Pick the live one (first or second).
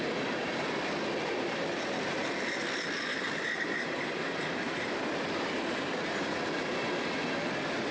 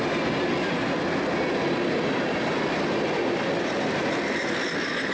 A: second